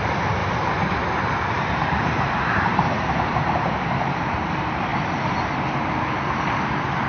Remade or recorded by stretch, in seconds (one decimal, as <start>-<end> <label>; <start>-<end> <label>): 0.0-0.4 recorded; 0.4-4.2 remade; 4.2-7.1 recorded